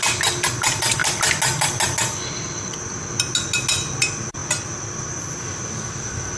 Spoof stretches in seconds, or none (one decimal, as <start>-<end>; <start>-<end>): none